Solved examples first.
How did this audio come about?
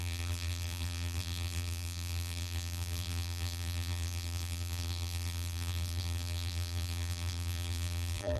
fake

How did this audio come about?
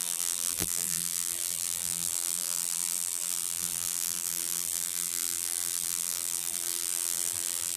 fake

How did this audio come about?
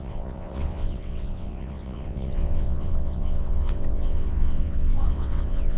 fake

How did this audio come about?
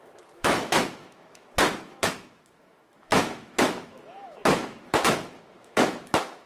fake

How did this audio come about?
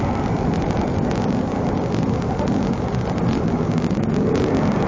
real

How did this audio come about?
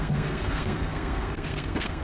fake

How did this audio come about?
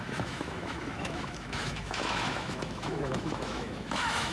fake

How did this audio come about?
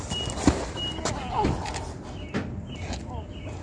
real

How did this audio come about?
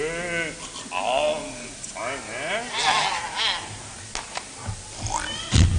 real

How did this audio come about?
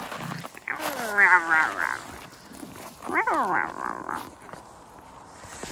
real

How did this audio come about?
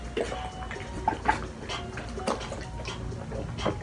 real